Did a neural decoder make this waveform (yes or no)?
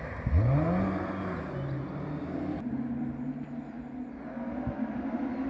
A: no